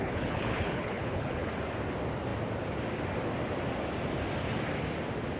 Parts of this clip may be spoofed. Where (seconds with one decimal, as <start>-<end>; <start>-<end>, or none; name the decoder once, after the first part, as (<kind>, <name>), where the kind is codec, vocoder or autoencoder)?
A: 0.0-1.5 (codec, HILCodec)